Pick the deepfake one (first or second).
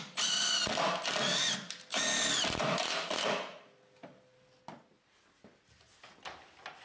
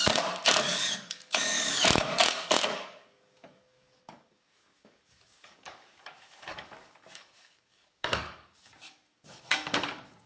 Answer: second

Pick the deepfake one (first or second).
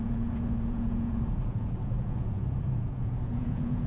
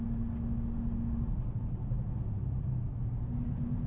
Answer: first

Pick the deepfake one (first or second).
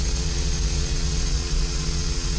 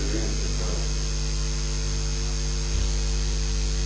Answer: first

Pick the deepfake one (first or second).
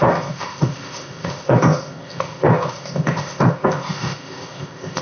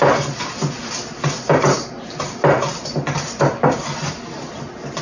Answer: first